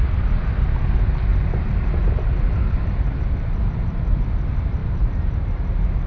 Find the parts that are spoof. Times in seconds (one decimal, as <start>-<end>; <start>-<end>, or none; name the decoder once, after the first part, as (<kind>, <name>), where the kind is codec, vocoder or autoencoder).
1.3-3.3 (vocoder, BigVGAN v2); 4.8-6.1